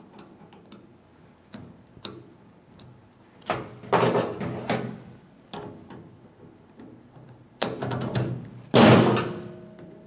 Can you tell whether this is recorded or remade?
recorded